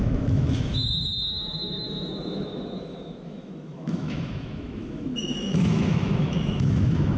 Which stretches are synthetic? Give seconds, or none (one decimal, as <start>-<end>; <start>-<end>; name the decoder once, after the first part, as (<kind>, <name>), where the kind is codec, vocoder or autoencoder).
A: 0.0-7.2 (autoencoder, DAC-VAE)